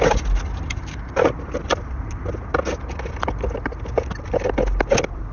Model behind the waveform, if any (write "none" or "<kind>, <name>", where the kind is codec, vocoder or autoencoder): none